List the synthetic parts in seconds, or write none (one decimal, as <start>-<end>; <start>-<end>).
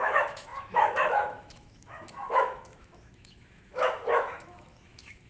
0.0-5.3